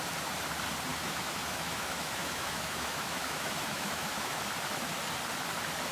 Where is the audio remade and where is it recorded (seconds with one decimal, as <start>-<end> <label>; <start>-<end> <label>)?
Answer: 0.0-0.9 recorded; 0.9-4.4 remade; 4.4-5.9 recorded